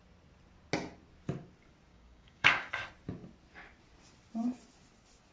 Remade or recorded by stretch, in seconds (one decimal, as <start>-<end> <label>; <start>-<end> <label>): 0.0-1.9 recorded; 1.9-2.7 remade; 2.7-5.3 recorded